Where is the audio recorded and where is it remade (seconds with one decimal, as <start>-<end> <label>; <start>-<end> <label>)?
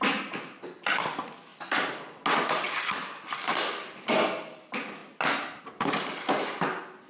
0.0-7.1 recorded